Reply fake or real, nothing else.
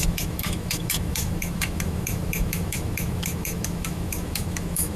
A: fake